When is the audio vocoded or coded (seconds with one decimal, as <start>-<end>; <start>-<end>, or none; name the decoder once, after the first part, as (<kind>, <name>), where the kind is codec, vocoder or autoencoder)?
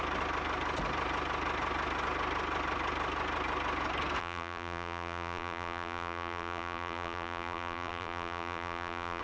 4.2-9.2 (vocoder, BigVGAN v2)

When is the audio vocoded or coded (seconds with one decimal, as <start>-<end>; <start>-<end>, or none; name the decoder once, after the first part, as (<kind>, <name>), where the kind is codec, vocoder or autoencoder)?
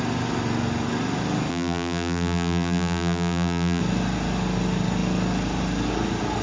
1.5-3.8 (vocoder, BigVGAN v2)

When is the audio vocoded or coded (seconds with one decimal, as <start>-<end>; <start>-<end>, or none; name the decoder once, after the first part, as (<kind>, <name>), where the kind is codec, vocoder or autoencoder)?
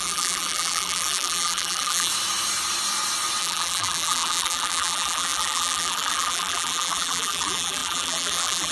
0.0-2.1 (vocoder, BigVGAN v2); 3.4-8.7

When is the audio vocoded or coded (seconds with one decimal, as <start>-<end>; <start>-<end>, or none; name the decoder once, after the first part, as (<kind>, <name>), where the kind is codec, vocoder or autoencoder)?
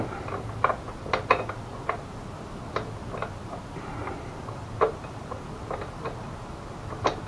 4.0-6.4 (vocoder, BigVGAN v2)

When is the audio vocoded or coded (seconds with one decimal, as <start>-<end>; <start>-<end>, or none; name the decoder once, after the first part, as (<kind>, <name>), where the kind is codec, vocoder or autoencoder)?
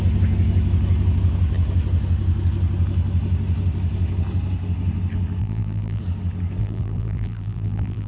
5.4-6.0 (vocoder, BigVGAN v2); 6.6-8.1